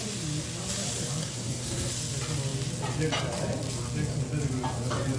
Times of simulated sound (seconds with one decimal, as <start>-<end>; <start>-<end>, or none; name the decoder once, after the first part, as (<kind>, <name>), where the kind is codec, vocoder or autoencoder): 1.2-1.9 (codec, SNAC)